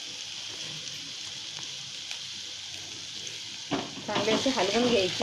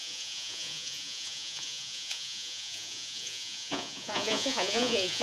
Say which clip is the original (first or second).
first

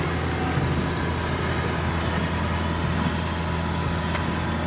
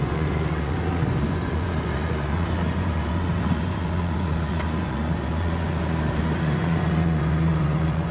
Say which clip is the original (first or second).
first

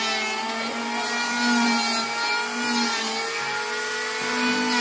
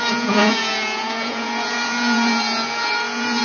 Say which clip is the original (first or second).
first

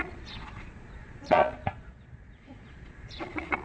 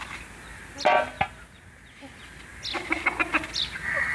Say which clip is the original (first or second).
second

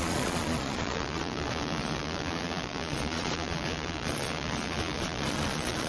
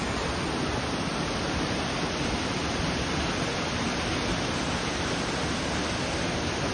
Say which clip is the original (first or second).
second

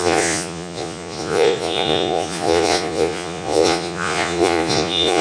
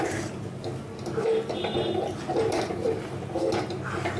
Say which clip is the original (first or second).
second